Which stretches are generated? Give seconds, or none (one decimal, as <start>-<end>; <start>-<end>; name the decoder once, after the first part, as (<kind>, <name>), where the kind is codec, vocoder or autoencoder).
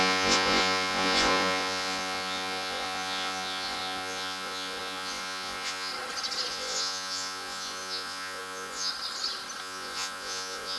0.0-5.9 (vocoder, Vocos); 6.5-8.9; 9.6-10.8